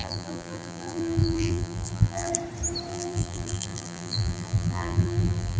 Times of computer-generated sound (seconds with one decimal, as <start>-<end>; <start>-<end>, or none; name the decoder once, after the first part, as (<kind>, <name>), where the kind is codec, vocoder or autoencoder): 0.0-2.3 (vocoder, BigVGAN v2); 2.9-5.6